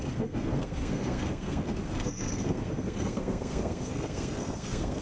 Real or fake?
fake